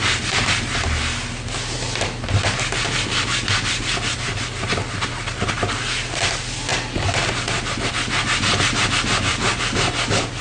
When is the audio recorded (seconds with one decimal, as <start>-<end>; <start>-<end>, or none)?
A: 0.0-10.4